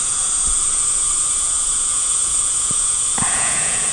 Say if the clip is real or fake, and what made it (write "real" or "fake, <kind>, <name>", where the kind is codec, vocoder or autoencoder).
fake, vocoder, Vocos